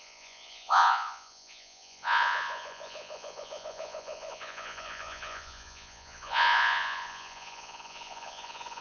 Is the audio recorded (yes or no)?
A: no